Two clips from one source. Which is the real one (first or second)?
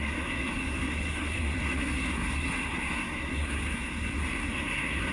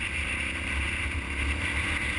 second